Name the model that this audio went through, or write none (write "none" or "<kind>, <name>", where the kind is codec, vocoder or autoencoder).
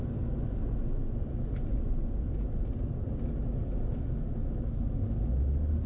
none